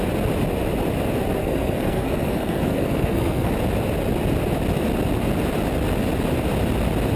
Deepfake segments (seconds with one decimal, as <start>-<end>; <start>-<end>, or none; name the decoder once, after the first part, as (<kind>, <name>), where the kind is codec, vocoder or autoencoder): 1.4-3.5 (codec, SNAC)